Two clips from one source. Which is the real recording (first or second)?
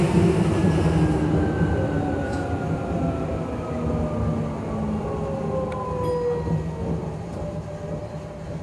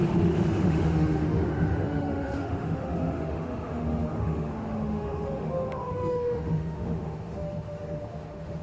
first